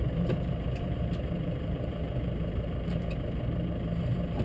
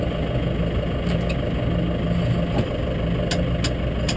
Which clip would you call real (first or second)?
second